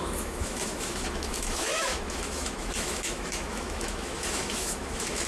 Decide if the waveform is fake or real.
fake